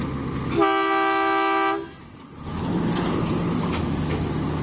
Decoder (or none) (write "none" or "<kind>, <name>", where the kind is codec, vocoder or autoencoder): none